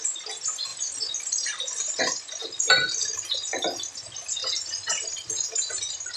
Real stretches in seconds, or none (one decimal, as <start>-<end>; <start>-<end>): 0.0-6.2